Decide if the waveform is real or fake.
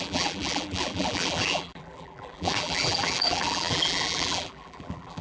fake